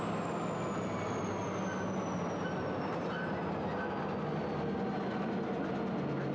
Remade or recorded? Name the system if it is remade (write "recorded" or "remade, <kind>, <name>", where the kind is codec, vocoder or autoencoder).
recorded